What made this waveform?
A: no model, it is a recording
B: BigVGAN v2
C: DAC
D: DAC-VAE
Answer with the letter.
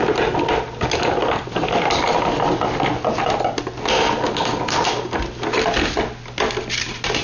A